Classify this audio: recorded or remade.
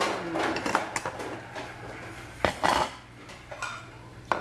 recorded